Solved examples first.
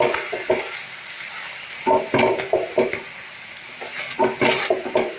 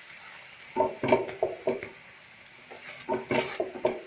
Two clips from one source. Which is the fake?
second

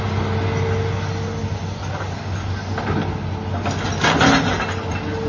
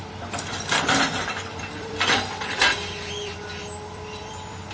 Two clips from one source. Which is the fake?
second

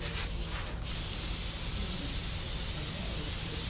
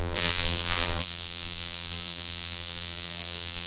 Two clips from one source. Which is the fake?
second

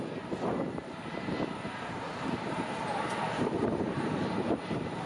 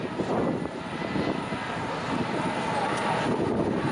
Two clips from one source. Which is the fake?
first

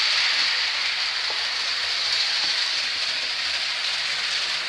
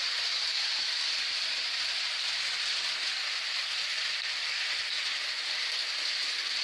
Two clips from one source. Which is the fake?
second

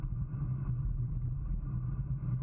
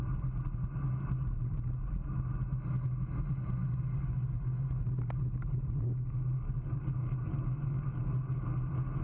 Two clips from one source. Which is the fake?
first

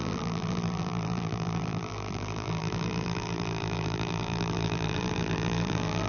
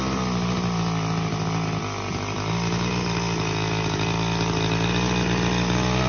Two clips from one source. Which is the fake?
first